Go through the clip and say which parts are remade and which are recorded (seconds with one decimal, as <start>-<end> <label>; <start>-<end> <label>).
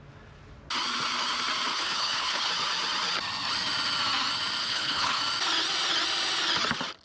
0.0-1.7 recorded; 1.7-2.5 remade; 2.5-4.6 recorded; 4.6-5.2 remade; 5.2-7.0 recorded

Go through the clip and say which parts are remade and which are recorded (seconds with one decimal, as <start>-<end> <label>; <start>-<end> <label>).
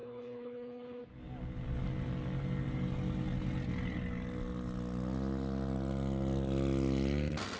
0.0-1.0 remade; 1.0-7.6 recorded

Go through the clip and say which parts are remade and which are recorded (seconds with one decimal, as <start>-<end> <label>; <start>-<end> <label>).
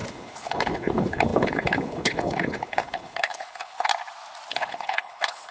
0.0-3.9 remade; 3.9-4.5 recorded; 4.5-5.5 remade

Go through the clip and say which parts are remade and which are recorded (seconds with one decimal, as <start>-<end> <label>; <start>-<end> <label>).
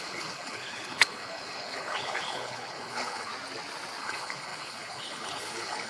0.0-3.3 remade; 3.3-4.0 recorded; 4.0-5.9 remade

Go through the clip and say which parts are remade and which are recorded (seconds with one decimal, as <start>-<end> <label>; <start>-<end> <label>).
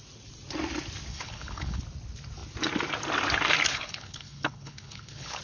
0.0-1.1 recorded; 1.1-1.8 remade; 1.8-3.7 recorded; 3.7-5.4 remade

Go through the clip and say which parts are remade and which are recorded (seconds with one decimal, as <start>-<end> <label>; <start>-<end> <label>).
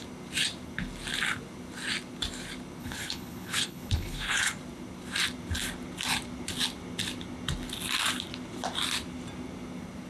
0.0-2.8 recorded; 2.8-4.5 remade; 4.5-10.1 recorded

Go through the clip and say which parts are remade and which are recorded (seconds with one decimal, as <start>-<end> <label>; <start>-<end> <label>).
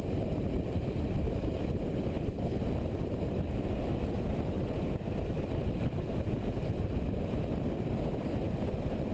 0.0-1.9 recorded; 1.9-2.6 remade; 2.6-9.1 recorded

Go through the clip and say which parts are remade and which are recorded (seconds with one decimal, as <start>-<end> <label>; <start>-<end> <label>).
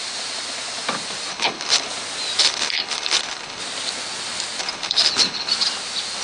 0.0-1.3 recorded; 1.3-1.9 remade; 1.9-2.4 recorded; 2.4-3.6 remade; 3.6-4.6 recorded; 4.6-5.5 remade; 5.5-6.2 recorded